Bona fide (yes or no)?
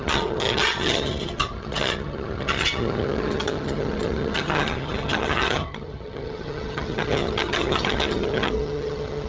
no